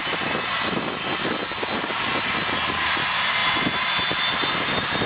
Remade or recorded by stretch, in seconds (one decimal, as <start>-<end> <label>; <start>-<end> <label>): 0.0-5.1 recorded